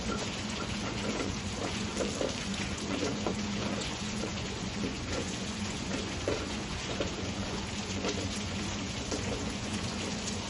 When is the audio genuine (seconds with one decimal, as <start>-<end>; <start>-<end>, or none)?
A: 1.9-2.4